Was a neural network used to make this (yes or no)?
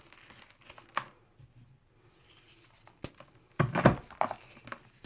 no